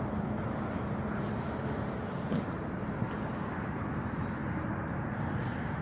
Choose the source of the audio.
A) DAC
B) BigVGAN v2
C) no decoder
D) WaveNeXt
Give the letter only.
B